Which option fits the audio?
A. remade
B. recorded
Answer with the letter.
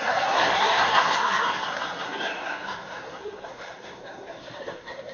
A